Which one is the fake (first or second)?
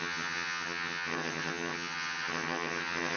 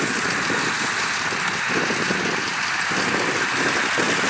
first